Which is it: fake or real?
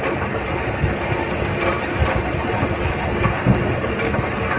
real